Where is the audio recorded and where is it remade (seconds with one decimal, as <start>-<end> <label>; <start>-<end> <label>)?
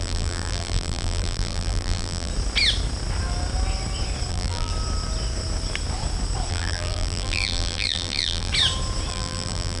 0.0-2.3 remade; 2.3-4.3 recorded; 4.3-4.7 remade; 4.7-6.5 recorded; 6.5-8.5 remade; 8.5-9.1 recorded; 9.1-9.8 remade